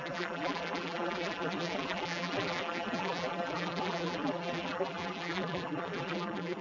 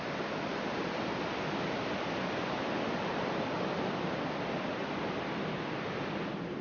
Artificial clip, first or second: first